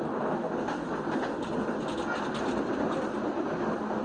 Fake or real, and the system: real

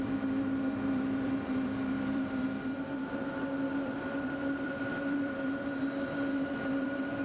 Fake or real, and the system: fake, vocoder, BigVGAN v2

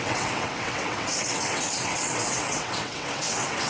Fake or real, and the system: fake, vocoder, WaveNeXt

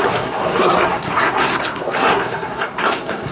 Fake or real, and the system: fake, codec, SNAC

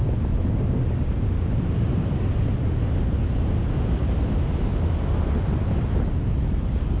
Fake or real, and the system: real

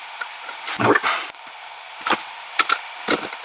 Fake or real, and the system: real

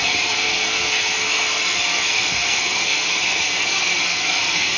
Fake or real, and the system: fake, codec, SNAC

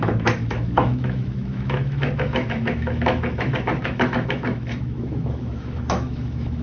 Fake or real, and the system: fake, autoencoder, DAC-VAE